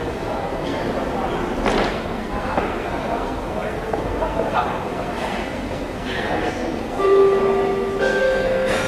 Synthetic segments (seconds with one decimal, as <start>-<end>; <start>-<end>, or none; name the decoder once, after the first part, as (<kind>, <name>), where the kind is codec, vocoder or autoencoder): 0.0-0.8 (codec, SNAC); 1.9-7.4; 8.0-8.9